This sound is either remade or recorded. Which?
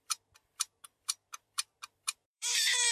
remade